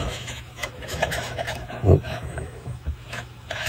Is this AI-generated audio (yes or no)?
yes